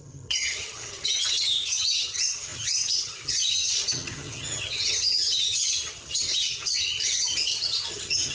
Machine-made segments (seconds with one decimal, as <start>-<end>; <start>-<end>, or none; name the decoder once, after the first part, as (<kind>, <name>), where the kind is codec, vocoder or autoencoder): 0.0-8.3 (vocoder, HiFi-GAN)